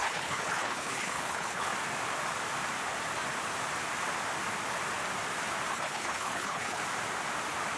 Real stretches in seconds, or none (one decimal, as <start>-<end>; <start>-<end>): 1.7-5.7; 6.8-7.8